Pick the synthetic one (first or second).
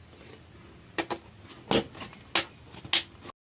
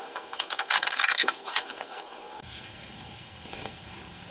second